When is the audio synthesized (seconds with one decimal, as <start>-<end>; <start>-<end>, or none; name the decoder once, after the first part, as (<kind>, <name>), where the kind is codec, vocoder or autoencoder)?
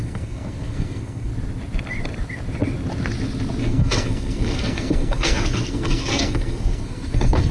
0.0-1.3 (codec, SNAC); 3.6-7.5